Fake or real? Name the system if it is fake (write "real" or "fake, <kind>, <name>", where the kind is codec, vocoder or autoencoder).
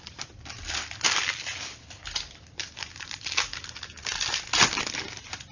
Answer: real